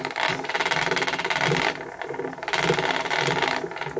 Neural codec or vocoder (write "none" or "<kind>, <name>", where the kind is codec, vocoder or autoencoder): none